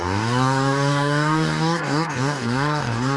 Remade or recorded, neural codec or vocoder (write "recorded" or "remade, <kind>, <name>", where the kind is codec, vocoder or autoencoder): remade, codec, DAC